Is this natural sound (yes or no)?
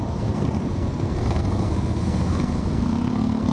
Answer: no